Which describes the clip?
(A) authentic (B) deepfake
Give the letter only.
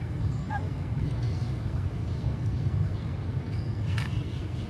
B